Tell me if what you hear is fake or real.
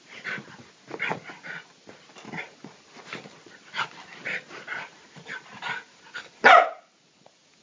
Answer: real